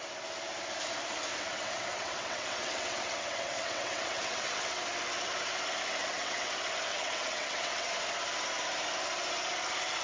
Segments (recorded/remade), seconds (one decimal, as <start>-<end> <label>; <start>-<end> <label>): 0.0-1.3 recorded; 1.3-4.8 remade; 4.8-6.0 recorded; 6.0-6.5 remade; 6.5-6.9 recorded; 6.9-7.9 remade; 7.9-10.0 recorded